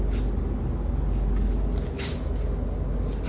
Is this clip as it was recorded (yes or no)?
yes